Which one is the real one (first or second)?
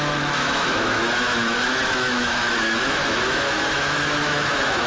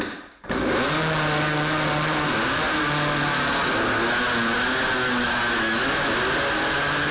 second